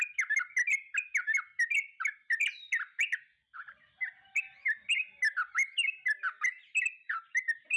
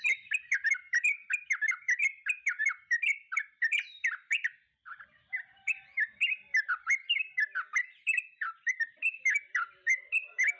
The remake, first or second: second